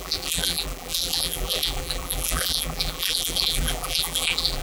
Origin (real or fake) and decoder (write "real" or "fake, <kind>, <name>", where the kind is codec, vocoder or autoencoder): fake, vocoder, BigVGAN v2